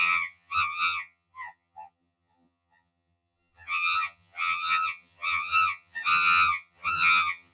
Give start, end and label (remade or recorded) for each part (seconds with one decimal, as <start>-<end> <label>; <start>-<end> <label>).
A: 0.0-7.5 remade